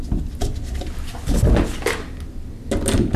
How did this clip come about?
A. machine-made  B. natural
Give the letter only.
B